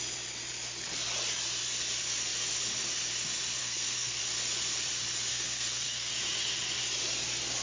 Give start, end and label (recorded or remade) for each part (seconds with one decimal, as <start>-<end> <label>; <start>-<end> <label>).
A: 0.0-3.6 recorded; 3.6-4.2 remade; 4.2-5.3 recorded; 5.3-6.1 remade; 6.1-7.6 recorded